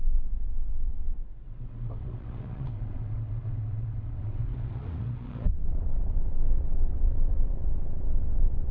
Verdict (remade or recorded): remade